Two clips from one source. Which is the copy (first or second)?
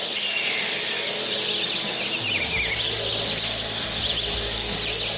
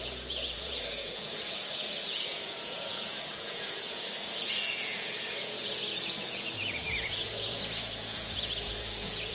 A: second